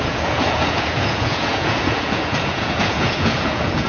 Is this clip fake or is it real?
fake